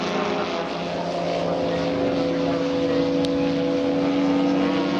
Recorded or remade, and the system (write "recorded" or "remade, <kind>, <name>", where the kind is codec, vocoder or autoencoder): recorded